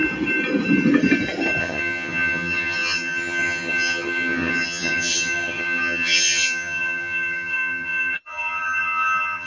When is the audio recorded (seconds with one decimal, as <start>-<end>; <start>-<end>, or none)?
0.0-1.6